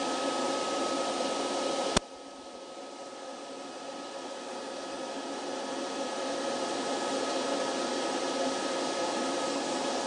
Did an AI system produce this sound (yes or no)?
no